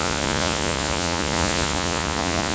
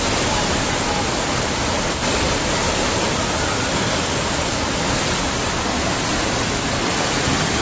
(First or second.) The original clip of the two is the second